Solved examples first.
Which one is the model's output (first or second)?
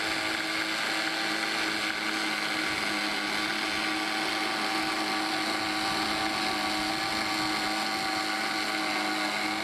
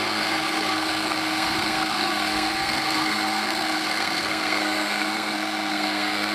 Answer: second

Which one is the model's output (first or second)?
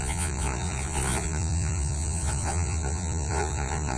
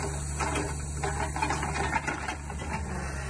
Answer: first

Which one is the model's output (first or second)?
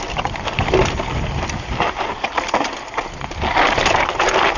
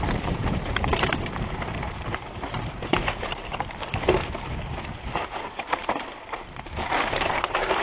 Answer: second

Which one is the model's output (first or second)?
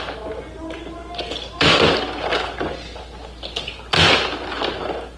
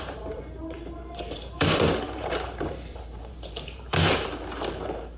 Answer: second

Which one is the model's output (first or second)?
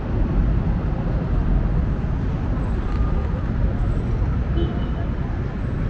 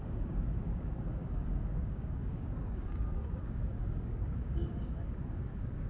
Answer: second